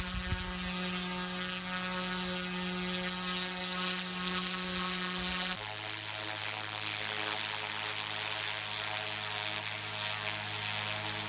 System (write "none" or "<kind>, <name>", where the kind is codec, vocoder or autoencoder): none